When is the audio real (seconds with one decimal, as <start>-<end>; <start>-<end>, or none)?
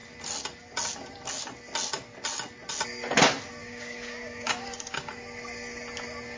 0.0-3.6; 5.1-6.4